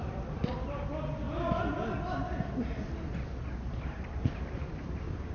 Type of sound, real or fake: real